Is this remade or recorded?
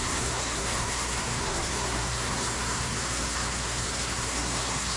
remade